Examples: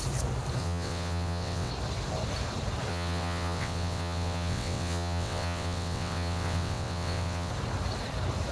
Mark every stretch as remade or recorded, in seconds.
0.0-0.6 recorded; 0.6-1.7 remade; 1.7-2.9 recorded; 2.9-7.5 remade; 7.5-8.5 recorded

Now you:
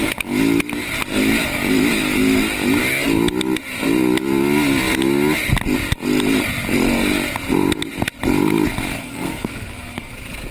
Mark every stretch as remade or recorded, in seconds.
0.0-9.0 recorded; 9.0-10.1 remade; 10.1-10.5 recorded

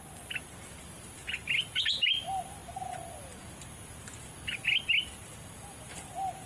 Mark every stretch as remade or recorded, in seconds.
0.0-6.5 recorded

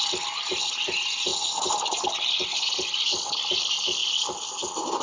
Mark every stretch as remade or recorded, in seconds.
0.0-5.0 recorded